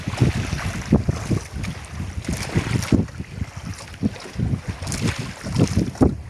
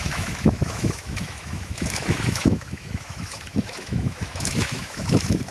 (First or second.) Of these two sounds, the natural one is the first